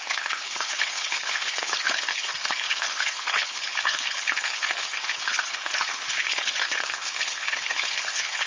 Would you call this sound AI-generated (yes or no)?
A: yes